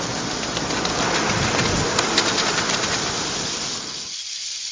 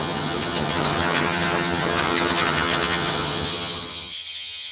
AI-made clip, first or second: second